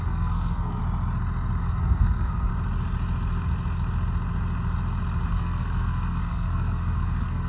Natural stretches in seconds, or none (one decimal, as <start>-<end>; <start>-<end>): 0.8-1.6; 2.5-5.3